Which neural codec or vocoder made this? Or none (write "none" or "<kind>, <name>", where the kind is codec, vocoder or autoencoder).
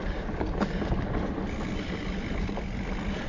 none